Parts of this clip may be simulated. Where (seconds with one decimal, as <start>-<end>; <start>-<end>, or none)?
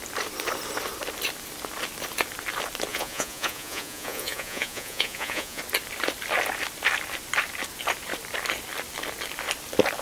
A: 2.9-5.6